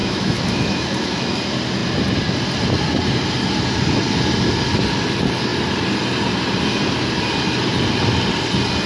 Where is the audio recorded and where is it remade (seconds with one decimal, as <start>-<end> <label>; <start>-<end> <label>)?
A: 0.0-1.4 remade; 1.4-8.9 recorded